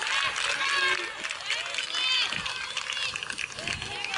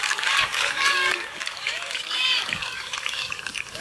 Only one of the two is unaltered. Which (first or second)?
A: first